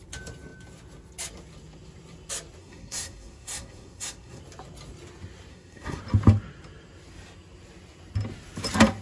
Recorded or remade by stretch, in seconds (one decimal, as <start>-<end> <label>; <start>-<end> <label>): 0.0-2.6 recorded; 2.6-4.4 remade; 4.4-5.5 recorded; 5.5-6.0 remade; 6.0-9.0 recorded